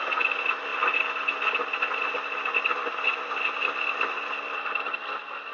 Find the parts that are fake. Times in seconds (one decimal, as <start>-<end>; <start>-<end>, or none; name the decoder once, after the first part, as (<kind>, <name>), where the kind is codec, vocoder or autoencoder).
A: none